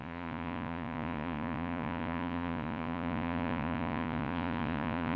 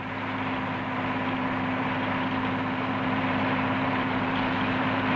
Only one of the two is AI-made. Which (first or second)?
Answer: first